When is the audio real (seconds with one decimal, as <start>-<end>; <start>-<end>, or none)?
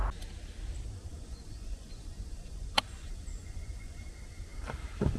0.0-1.1; 4.1-5.2